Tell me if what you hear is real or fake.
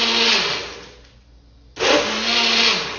real